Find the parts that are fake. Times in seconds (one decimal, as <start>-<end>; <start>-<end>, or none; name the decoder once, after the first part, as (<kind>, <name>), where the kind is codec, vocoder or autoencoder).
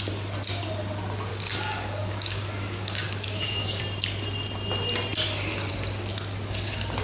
1.3-3.8 (codec, DAC)